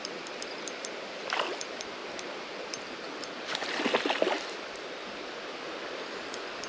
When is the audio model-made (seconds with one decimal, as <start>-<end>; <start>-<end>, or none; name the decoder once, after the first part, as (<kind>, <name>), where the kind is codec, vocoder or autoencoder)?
none